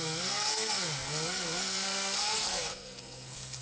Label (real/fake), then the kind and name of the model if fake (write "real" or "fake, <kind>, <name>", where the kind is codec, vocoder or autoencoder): fake, codec, SNAC